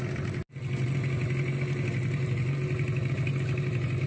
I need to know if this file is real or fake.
real